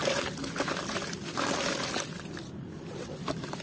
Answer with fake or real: real